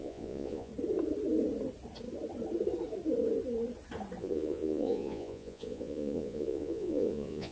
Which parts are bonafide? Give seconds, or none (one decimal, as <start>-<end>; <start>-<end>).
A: 0.7-4.2